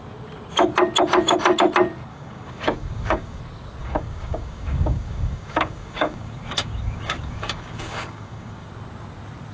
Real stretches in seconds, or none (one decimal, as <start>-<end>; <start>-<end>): 0.0-2.1; 3.4-3.8; 8.7-9.5